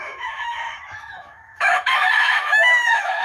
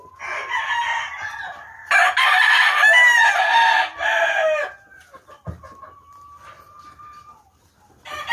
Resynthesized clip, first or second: first